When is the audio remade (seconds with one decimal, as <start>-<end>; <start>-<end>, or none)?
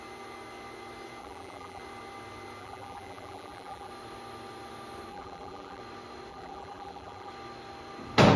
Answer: 1.2-1.8; 2.6-3.9; 5.1-5.8; 6.3-7.3